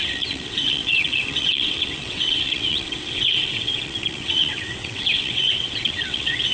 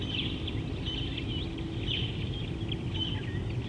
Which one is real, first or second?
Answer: second